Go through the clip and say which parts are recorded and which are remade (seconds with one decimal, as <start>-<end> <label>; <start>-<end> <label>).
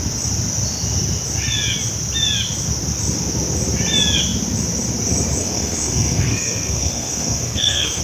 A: 0.0-5.4 recorded; 5.4-8.0 remade